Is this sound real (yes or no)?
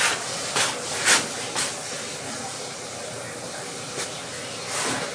yes